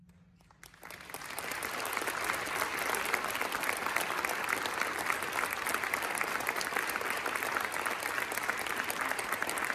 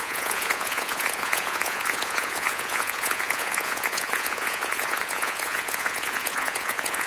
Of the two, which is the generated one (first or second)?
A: second